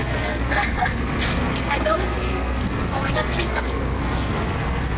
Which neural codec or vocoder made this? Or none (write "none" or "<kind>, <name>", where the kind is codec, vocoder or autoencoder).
codec, SNAC